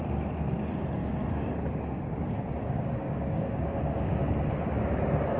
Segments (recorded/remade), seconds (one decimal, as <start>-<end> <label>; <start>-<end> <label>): 0.0-1.0 recorded; 1.0-4.2 remade; 4.2-5.4 recorded